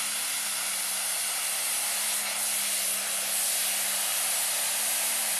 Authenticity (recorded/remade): recorded